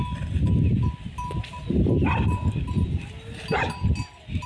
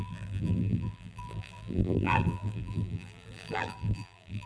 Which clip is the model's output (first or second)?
second